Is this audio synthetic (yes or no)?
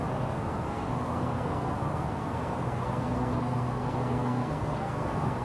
yes